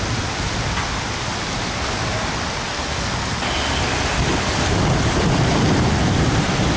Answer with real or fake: real